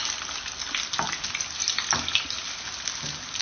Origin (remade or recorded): recorded